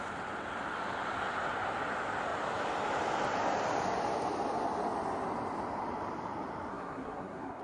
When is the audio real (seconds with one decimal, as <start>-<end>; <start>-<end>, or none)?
0.0-6.7